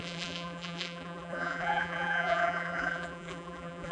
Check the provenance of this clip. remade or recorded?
remade